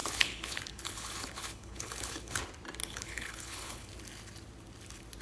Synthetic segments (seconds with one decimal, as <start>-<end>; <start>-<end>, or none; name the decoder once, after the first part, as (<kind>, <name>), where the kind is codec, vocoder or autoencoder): 0.0-2.4 (codec, HILCodec); 2.8-3.9